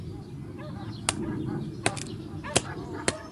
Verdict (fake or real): real